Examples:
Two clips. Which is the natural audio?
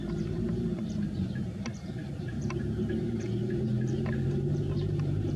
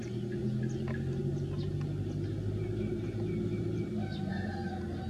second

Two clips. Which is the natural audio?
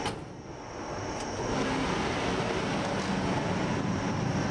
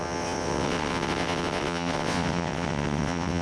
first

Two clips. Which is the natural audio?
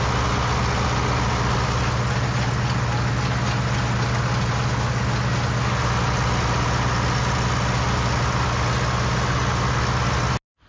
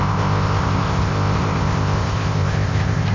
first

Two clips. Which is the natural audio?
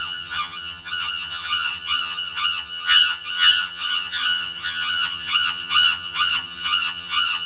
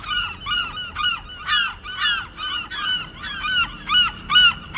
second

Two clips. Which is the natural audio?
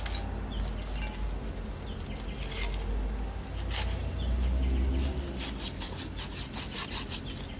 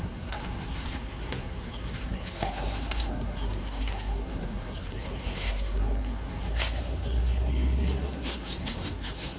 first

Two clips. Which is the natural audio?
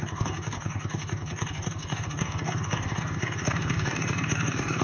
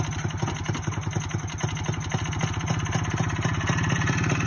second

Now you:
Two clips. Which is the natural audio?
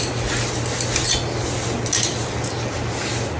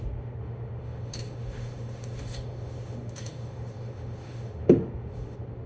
first